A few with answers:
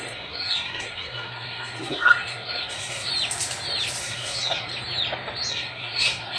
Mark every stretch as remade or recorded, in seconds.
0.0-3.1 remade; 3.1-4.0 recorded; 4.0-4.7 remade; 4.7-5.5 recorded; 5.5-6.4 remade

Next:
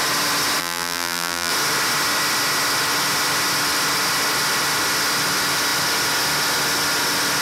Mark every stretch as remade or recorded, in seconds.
0.0-0.6 recorded; 0.6-1.5 remade; 1.5-7.4 recorded

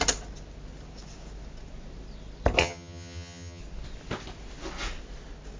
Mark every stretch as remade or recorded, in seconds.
0.0-2.6 recorded; 2.6-3.6 remade; 3.6-5.6 recorded

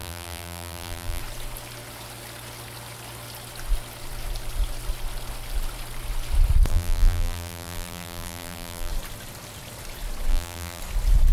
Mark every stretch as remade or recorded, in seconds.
0.0-1.2 remade; 1.2-6.7 recorded; 6.7-8.9 remade; 8.9-10.3 recorded; 10.3-10.8 remade; 10.8-11.3 recorded

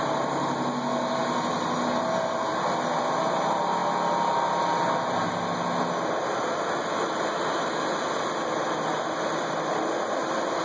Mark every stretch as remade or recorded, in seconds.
0.0-10.6 recorded